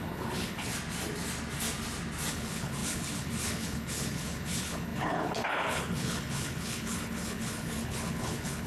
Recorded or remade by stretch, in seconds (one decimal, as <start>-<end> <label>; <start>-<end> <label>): 0.0-0.7 remade; 0.7-2.3 recorded; 2.3-8.7 remade